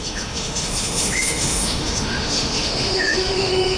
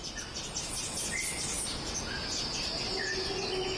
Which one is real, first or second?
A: second